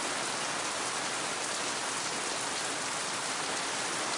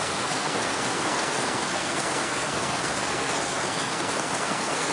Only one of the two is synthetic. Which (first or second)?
second